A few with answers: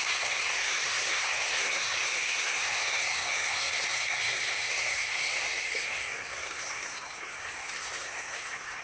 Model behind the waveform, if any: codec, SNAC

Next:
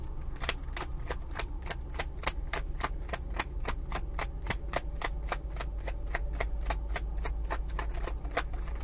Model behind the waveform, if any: none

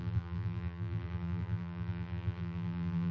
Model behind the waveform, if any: vocoder, BigVGAN v2